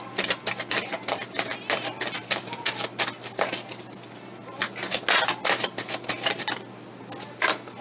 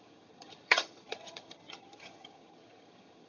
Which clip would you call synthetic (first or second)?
second